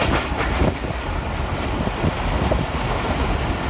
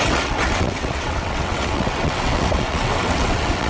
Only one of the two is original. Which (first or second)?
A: first